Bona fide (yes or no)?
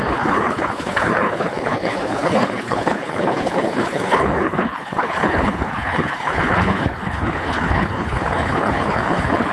no